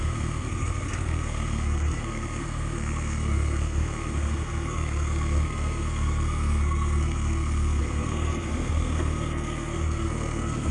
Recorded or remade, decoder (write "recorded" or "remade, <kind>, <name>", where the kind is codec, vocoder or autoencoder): remade, codec, SNAC